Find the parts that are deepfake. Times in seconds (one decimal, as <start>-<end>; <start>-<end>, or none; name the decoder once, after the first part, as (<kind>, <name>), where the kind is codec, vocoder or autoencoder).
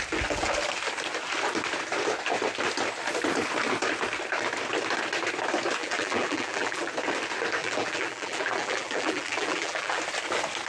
5.8-6.9 (vocoder, BigVGAN v2); 7.6-10.0